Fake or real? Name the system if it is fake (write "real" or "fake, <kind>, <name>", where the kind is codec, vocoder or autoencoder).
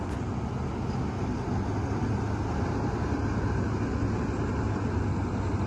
real